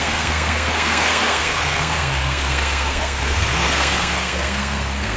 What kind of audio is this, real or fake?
fake